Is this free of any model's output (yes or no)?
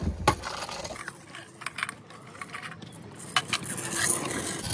yes